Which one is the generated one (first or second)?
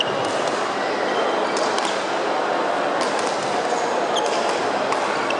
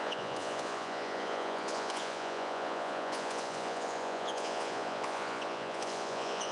second